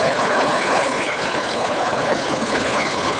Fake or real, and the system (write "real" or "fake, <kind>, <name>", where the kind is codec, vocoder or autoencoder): fake, codec, HILCodec